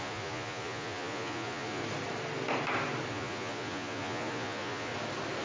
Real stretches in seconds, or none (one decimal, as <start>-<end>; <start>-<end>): 1.8-3.1; 4.9-5.4